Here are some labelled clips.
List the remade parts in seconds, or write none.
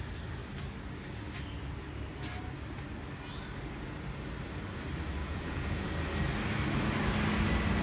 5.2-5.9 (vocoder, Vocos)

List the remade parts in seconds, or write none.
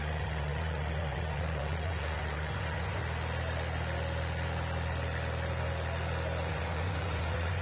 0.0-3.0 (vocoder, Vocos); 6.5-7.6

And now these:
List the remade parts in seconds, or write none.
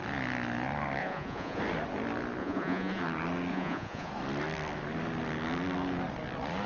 1.0-1.6 (vocoder, Vocos); 2.4-3.0; 3.5-4.1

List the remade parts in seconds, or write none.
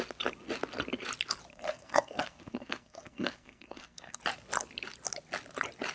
1.5-4.2 (codec, SNAC)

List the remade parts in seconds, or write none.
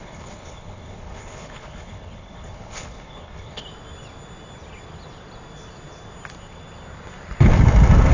0.0-3.6 (codec, HILCodec)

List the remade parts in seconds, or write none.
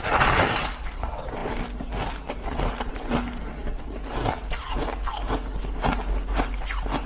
none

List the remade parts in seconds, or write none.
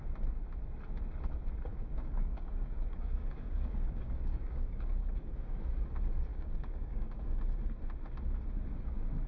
1.7-5.6 (codec, DAC); 6.3-7.4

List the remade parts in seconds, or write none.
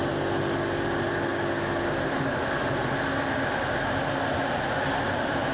0.0-1.3 (vocoder, BigVGAN v2); 4.6-5.5